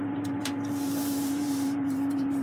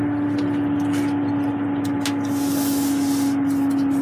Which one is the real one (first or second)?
second